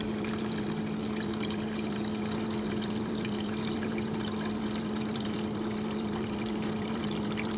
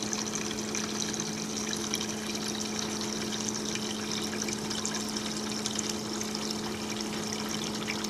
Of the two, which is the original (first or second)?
second